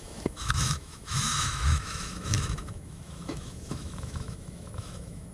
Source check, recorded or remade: remade